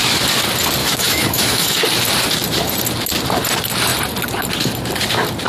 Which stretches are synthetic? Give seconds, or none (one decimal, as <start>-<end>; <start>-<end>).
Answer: 0.8-1.8

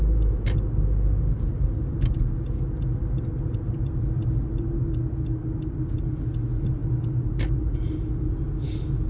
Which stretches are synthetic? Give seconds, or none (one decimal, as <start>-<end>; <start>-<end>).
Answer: none

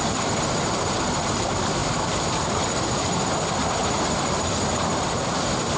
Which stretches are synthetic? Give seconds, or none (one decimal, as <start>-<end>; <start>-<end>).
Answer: 0.0-3.8; 5.0-5.8

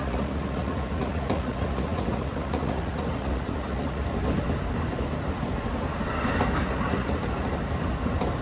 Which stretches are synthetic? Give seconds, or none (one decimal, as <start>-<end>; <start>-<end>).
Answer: 0.0-4.0; 6.6-7.2

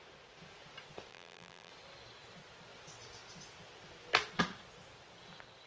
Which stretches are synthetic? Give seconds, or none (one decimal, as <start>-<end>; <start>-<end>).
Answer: 1.1-1.7

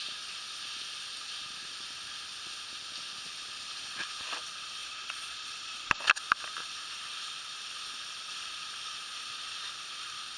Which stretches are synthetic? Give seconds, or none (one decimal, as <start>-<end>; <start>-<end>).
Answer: 4.8-6.0

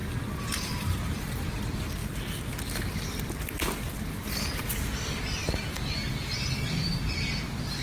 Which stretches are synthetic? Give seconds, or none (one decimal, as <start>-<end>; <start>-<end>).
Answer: 0.0-1.5; 5.4-7.1